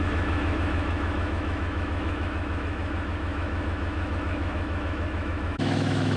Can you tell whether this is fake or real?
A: fake